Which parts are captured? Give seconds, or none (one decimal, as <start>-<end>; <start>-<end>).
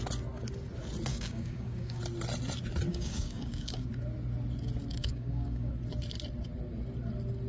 0.0-1.1; 2.0-2.9; 3.9-4.9; 5.7-7.5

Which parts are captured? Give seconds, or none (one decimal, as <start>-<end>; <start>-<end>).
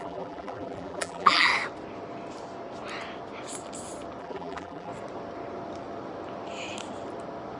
1.5-4.2; 4.9-7.6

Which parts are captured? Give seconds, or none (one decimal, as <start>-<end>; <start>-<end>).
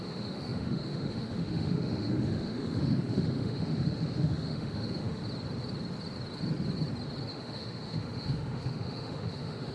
5.2-7.3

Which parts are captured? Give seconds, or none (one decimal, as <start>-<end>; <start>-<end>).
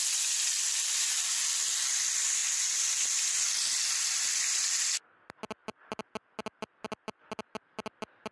0.0-8.3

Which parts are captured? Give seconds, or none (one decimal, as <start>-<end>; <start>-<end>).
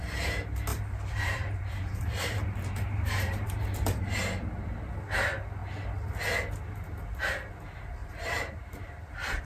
0.0-0.7; 4.2-8.0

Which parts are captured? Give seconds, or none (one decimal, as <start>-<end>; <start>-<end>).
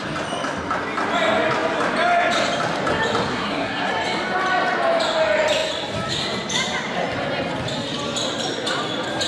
0.0-3.3; 3.9-9.3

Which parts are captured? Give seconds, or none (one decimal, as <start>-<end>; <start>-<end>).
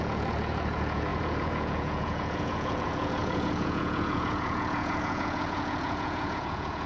none